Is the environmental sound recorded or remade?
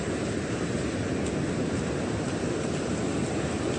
recorded